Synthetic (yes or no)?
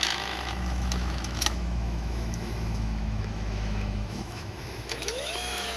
yes